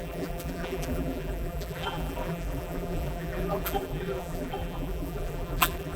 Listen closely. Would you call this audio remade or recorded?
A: remade